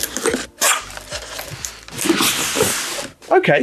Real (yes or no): yes